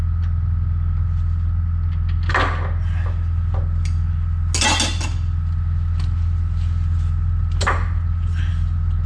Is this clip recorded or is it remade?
recorded